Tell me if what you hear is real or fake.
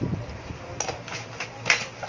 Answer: real